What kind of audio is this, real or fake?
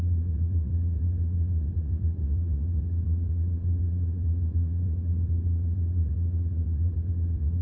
fake